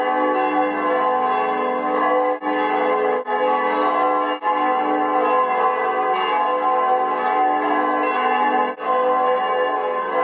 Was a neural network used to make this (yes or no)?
no